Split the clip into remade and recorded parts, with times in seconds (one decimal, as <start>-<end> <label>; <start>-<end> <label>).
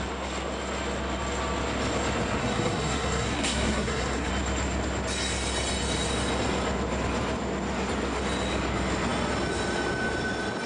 0.0-2.4 recorded; 2.4-4.3 remade; 4.3-10.7 recorded